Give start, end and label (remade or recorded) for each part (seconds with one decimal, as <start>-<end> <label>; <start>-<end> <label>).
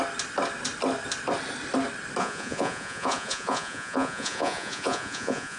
0.0-2.2 recorded; 2.2-5.6 remade